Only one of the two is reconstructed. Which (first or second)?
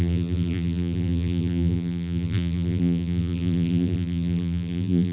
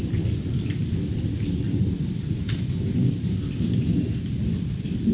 first